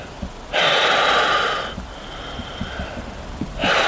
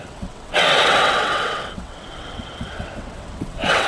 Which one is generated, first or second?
second